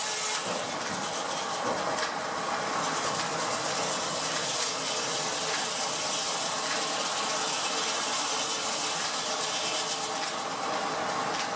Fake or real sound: real